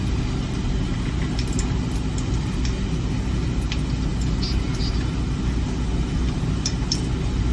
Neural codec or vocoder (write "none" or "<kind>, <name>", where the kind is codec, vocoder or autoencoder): none